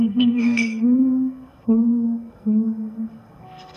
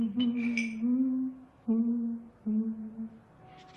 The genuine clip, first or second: second